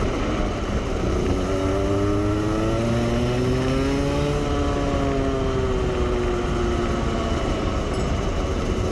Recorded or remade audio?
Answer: recorded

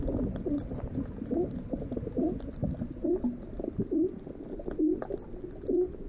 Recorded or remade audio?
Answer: recorded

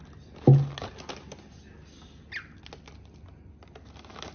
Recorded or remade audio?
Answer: recorded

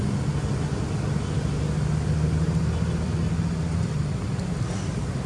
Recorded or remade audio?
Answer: recorded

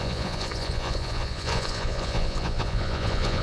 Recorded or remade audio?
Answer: remade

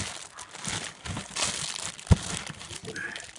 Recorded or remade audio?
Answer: recorded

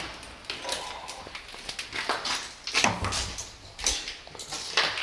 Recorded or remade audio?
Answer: recorded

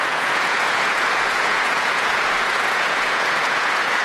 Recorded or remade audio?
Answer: remade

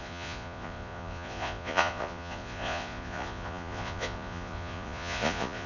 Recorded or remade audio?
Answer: remade